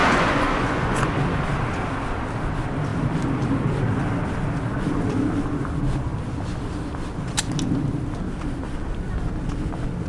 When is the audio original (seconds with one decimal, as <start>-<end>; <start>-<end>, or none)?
1.1-10.1